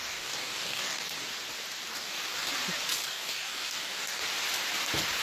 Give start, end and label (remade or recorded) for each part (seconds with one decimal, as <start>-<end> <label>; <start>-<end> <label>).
0.0-1.1 remade; 1.1-1.9 recorded; 1.9-2.5 remade; 2.5-3.0 recorded; 3.0-4.2 remade; 4.2-5.2 recorded